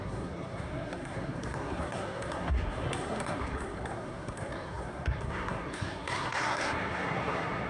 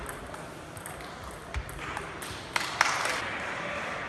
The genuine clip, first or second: second